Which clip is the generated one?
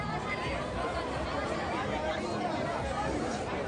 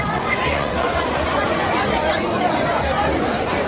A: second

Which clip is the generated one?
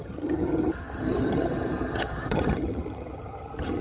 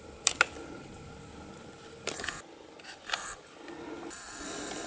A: first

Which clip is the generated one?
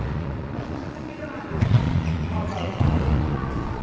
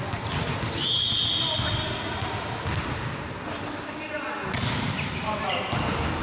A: first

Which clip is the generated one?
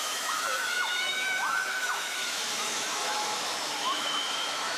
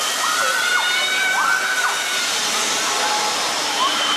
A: first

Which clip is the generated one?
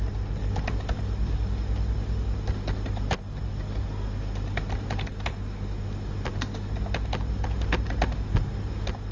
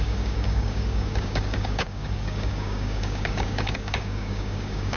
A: second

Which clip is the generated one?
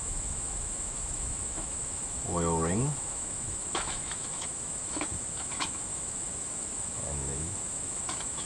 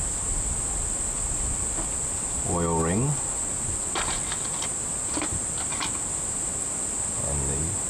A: first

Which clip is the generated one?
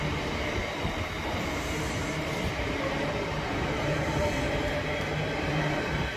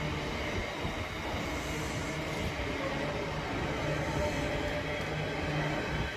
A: first